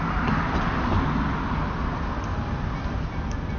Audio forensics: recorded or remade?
recorded